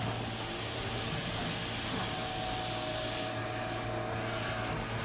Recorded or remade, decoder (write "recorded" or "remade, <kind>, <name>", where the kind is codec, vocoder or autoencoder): recorded